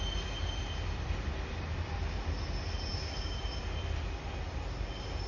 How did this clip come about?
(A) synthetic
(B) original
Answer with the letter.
B